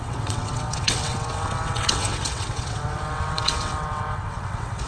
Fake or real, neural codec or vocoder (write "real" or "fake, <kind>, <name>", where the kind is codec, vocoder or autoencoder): fake, vocoder, WaveNeXt